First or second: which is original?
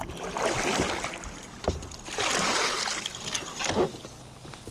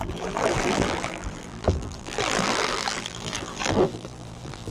first